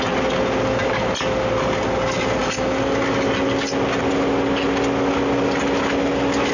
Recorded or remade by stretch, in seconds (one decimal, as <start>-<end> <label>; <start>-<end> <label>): 0.0-6.5 recorded